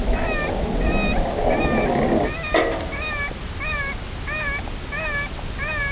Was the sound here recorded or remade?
recorded